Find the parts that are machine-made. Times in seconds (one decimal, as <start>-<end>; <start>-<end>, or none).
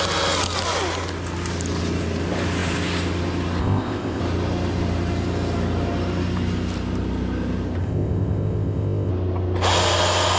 3.6-4.2; 7.8-9.1